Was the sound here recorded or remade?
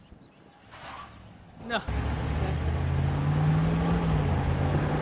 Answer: recorded